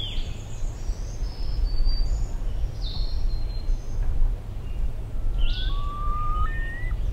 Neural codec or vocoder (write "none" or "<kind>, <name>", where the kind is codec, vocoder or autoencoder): none